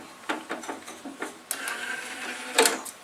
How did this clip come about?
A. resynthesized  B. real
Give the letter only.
B